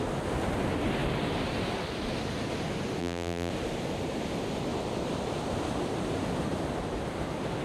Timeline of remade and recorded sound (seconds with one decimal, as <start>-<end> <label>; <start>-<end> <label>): 0.0-3.0 recorded; 3.0-3.5 remade; 3.5-7.6 recorded